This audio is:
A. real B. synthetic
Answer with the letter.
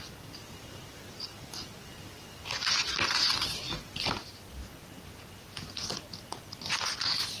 A